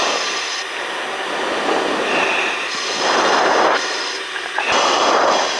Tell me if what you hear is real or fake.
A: real